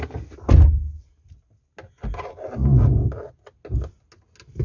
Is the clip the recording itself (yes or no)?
yes